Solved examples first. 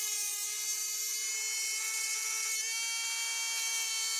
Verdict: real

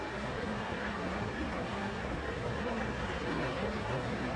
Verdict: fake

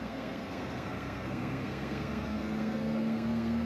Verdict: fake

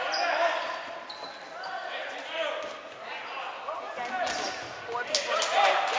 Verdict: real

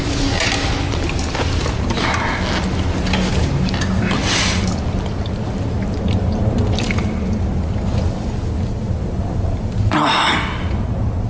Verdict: real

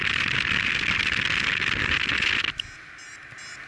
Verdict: real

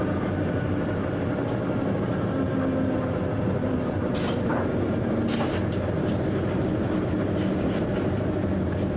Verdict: real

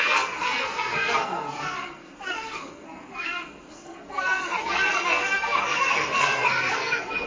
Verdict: fake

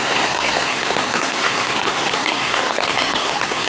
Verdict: fake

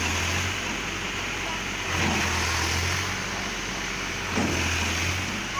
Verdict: real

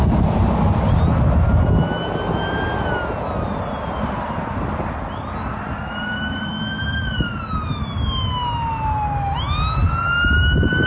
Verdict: real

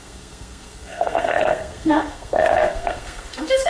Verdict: fake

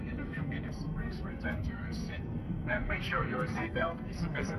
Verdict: fake